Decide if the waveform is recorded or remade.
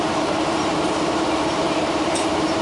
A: remade